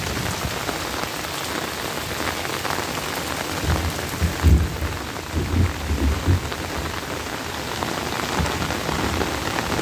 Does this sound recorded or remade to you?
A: recorded